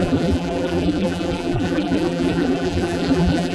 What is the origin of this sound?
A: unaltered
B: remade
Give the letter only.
B